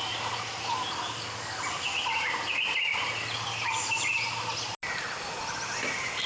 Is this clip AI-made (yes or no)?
no